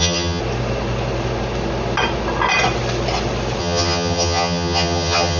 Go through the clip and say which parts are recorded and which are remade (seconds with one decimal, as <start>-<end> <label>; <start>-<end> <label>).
0.0-0.4 remade; 0.4-3.6 recorded; 3.6-5.4 remade